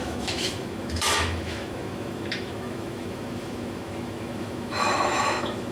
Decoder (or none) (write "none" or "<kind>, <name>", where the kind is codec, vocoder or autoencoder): autoencoder, DAC-VAE